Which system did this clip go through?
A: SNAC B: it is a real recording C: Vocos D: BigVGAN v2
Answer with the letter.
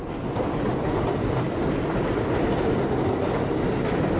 B